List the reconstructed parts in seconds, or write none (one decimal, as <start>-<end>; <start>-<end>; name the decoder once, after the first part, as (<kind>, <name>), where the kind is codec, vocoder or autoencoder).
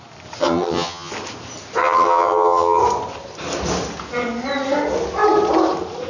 0.4-1.1 (vocoder, HiFi-GAN); 1.8-2.8